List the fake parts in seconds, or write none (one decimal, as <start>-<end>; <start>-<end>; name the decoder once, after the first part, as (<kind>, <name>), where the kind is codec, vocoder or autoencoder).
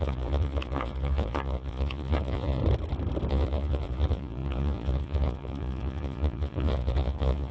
0.0-2.6 (vocoder, Vocos); 3.3-7.5